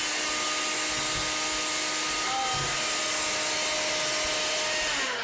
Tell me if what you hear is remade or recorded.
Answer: recorded